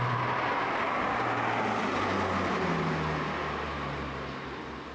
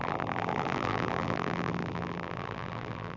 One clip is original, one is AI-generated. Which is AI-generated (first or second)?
second